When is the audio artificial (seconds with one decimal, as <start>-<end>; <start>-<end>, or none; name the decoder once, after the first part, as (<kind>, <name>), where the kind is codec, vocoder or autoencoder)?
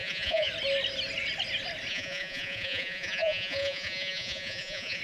0.0-0.5 (vocoder, Vocos); 1.9-5.0